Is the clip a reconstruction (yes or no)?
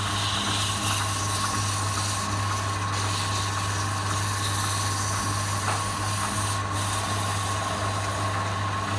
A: no